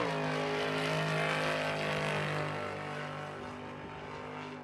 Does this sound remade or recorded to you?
recorded